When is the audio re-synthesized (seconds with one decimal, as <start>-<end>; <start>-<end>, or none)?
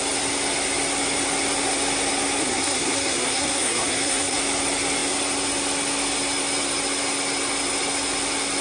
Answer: 2.4-4.4